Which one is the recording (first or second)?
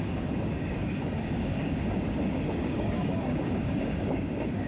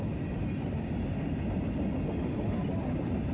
second